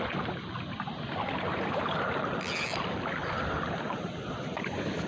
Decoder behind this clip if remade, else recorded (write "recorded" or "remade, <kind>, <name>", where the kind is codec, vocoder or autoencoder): remade, vocoder, BigVGAN v2